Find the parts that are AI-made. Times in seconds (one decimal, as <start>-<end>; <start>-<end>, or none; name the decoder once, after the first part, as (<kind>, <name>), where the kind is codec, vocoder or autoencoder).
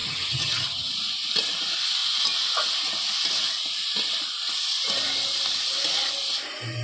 0.0-0.9 (vocoder, HiFi-GAN)